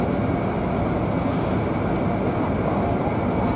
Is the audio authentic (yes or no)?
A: yes